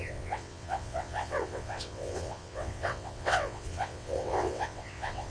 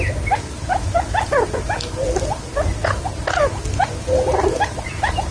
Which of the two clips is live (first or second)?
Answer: second